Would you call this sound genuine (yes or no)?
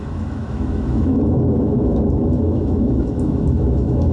no